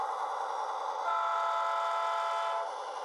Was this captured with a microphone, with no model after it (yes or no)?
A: yes